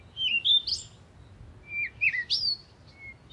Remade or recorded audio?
recorded